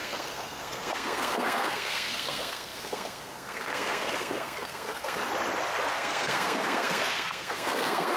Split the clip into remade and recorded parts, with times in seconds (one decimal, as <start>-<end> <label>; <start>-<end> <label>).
0.0-5.2 remade; 5.2-5.9 recorded; 5.9-8.2 remade